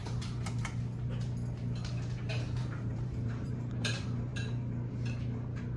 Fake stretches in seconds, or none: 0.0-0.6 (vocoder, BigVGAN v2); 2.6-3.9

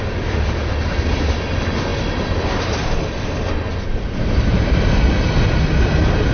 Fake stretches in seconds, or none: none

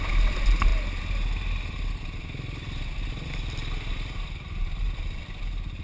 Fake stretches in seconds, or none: none

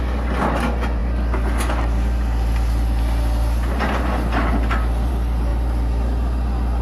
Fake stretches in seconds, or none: none

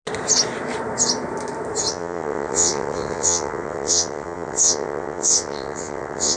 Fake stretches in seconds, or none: 1.9-6.4 (vocoder, WaveNeXt)

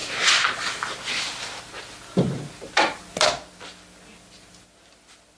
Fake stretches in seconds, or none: none

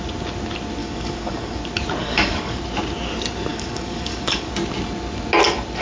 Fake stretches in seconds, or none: 0.8-1.6 (codec, DAC); 2.0-2.6; 3.5-4.5